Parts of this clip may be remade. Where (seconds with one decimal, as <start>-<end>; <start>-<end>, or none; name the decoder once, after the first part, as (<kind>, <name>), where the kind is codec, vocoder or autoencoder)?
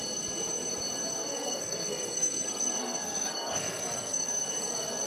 1.2-4.3 (codec, SNAC)